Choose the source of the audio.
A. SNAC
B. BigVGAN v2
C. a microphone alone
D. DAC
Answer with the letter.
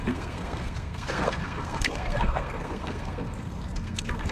A